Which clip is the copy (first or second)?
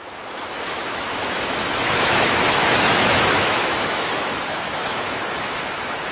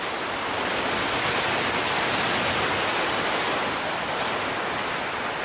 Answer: first